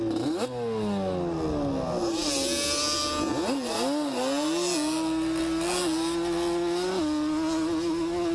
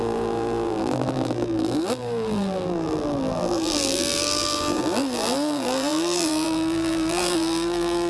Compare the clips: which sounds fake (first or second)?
second